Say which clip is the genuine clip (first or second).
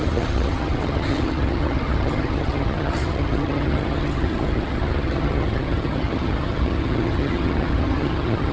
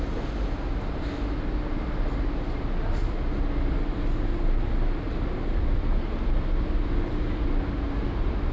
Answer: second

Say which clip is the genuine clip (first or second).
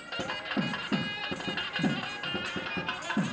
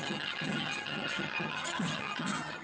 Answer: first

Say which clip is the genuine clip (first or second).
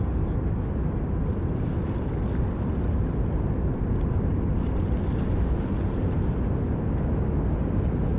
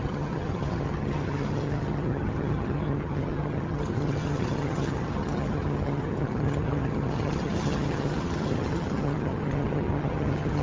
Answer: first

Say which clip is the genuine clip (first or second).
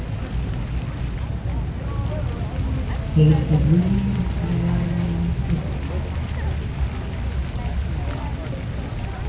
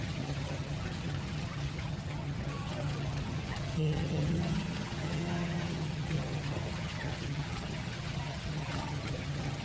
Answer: first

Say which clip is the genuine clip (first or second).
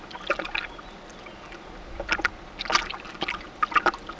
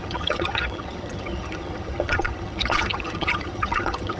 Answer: first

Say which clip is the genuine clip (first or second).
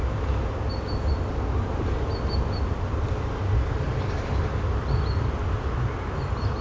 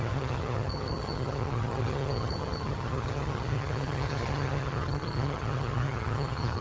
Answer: first